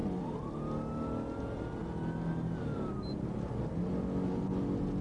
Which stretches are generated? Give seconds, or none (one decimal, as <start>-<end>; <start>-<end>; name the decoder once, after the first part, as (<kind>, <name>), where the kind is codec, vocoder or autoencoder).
0.0-0.6 (vocoder, BigVGAN v2)